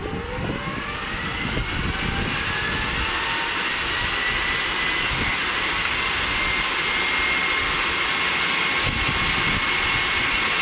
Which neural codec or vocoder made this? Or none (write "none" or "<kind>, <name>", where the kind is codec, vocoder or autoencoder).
none